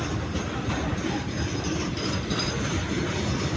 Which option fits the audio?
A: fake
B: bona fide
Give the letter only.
B